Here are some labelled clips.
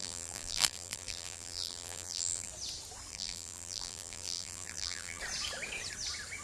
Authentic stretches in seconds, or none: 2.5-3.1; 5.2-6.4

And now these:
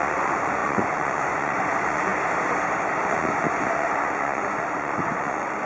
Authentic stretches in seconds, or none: 2.1-3.0